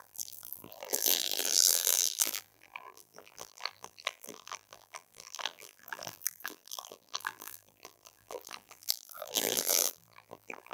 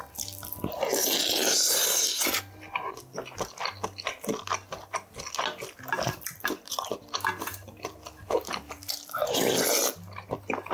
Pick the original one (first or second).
second